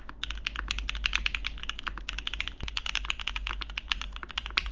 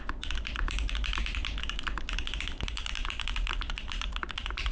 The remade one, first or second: second